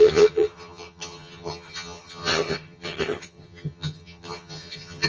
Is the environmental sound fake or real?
fake